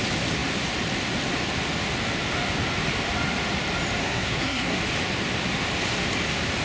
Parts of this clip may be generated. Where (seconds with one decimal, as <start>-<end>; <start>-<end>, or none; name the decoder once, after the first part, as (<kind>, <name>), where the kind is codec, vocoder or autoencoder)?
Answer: 4.0-4.8 (codec, SNAC)